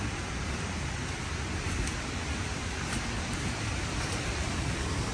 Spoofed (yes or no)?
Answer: no